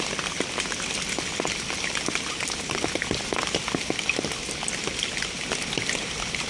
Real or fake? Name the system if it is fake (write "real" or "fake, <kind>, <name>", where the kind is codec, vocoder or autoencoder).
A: real